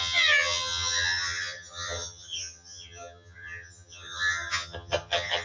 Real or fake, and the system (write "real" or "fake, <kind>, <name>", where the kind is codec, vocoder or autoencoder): fake, vocoder, HiFi-GAN